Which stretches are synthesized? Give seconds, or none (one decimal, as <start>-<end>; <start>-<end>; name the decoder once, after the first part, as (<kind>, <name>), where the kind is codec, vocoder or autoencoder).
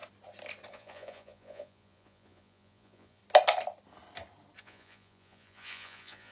0.7-3.2 (vocoder, Vocos); 4.6-6.3